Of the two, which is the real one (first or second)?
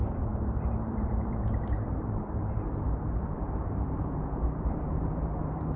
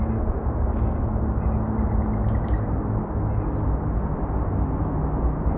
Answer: second